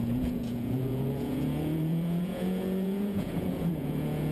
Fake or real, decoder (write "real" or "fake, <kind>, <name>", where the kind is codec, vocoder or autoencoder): fake, vocoder, Vocos